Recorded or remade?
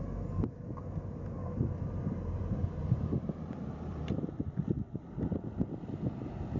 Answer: remade